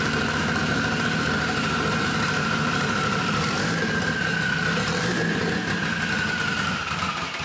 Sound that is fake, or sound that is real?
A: fake